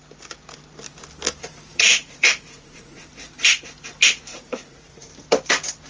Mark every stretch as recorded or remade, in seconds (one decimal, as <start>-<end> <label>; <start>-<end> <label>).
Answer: 0.0-1.7 recorded; 1.7-3.0 remade; 3.0-4.3 recorded; 4.3-5.1 remade; 5.1-5.9 recorded